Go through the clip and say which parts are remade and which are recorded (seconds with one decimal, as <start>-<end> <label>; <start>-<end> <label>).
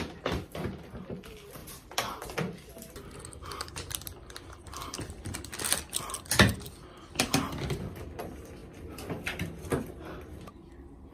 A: 0.0-11.1 recorded